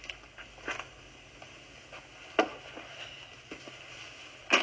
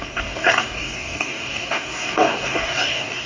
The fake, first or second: second